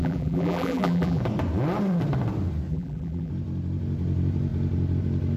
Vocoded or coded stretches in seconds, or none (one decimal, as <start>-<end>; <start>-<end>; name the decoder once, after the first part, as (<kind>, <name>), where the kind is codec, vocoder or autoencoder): 0.0-1.2 (vocoder, BigVGAN v2); 2.7-3.3